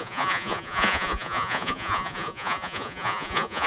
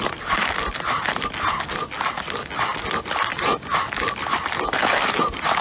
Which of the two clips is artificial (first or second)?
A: first